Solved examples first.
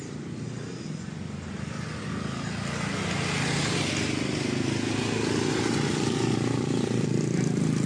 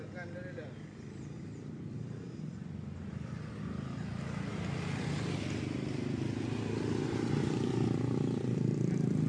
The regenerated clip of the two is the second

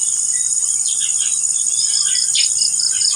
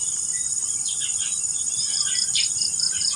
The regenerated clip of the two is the second